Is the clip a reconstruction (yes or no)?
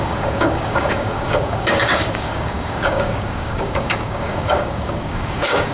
yes